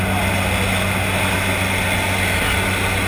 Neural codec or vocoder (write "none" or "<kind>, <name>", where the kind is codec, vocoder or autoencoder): none